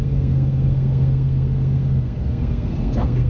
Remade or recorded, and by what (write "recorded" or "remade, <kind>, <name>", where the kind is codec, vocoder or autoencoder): remade, codec, SNAC